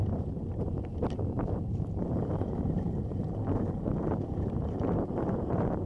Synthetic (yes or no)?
yes